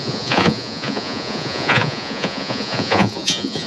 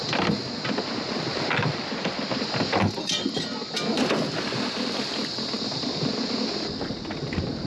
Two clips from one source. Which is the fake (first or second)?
first